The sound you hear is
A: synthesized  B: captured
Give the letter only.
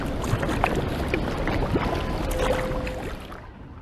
B